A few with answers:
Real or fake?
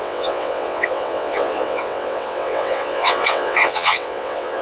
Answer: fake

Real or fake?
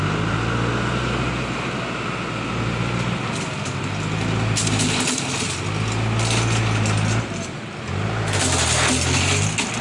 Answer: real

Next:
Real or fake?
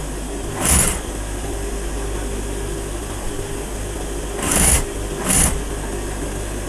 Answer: real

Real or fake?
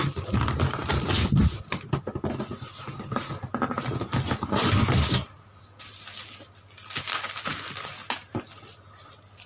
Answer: real